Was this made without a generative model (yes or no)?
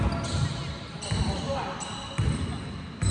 yes